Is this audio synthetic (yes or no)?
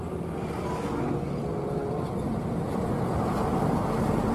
no